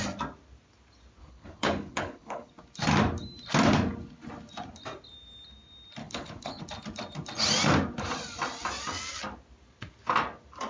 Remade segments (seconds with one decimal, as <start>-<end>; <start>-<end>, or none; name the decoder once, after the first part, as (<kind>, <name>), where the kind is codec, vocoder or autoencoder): 1.2-2.5 (codec, HILCodec); 6.0-6.6